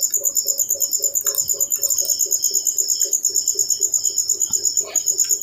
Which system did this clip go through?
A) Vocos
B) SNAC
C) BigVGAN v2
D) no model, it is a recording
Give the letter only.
D